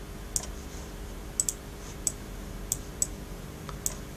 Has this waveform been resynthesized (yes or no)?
no